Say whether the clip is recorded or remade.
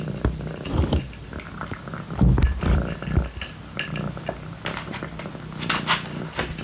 recorded